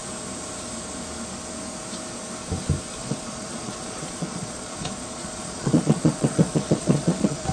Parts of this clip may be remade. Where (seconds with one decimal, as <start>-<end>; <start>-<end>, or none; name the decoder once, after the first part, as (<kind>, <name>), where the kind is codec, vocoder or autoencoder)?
3.0-7.5 (vocoder, Vocos)